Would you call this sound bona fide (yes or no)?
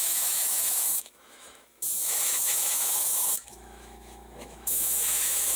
no